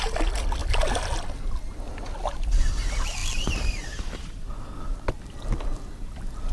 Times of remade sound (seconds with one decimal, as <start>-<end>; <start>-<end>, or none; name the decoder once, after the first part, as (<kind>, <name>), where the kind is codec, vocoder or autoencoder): none